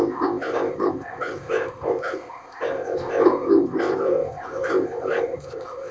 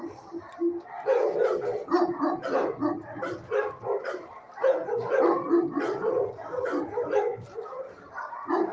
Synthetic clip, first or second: first